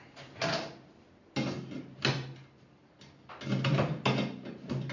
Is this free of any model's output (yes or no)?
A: yes